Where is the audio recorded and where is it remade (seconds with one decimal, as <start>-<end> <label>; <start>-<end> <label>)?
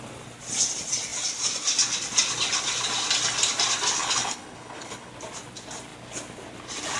0.0-4.0 recorded; 4.0-5.1 remade; 5.1-7.0 recorded